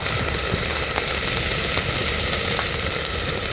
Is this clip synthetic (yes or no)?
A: no